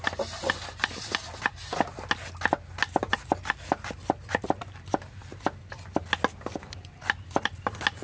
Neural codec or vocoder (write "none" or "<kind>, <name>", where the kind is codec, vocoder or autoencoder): none